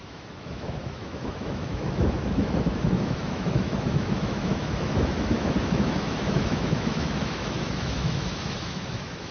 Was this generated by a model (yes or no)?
yes